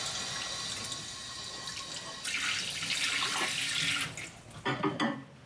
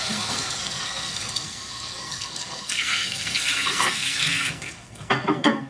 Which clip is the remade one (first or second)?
second